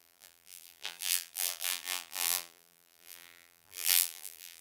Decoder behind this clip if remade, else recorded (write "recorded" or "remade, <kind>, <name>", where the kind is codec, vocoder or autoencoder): remade, vocoder, BigVGAN v2